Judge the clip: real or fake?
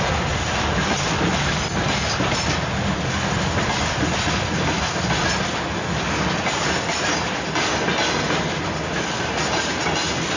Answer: real